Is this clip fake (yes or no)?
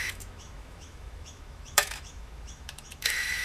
yes